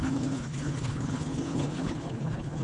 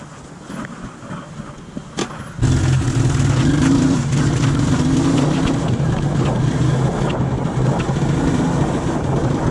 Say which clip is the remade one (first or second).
first